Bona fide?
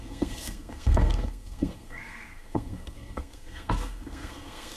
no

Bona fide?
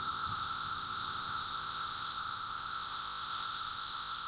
no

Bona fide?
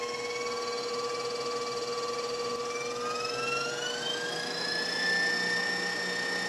yes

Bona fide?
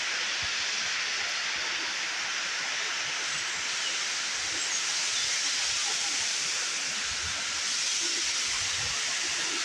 yes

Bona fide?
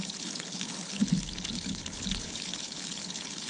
no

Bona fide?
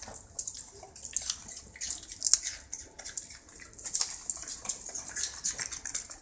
yes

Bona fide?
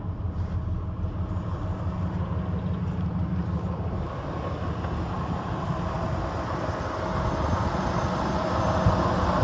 yes